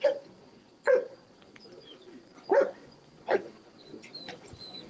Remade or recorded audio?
remade